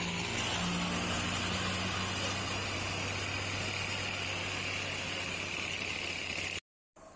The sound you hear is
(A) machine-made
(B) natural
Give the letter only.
B